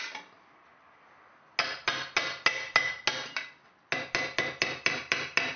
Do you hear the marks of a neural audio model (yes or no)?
no